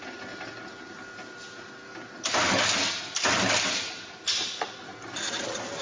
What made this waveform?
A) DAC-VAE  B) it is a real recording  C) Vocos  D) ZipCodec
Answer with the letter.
B